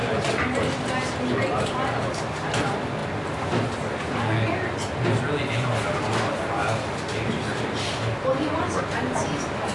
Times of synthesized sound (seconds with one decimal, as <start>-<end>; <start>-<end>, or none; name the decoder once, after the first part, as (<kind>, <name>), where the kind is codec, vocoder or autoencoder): none